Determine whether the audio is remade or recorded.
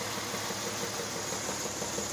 recorded